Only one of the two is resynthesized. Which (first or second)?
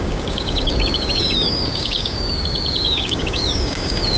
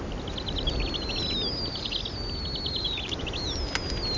first